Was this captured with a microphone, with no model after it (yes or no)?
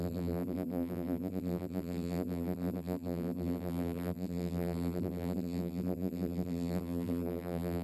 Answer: no